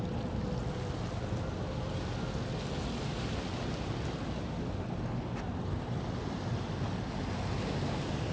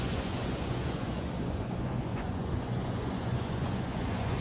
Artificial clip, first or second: second